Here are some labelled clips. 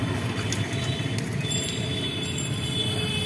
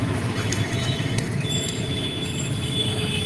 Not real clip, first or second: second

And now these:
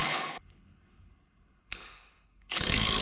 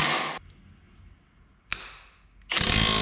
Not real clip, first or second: first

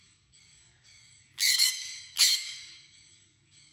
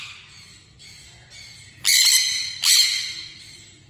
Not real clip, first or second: first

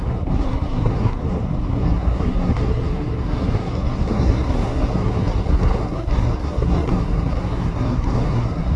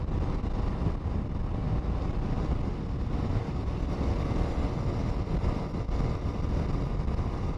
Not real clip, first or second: first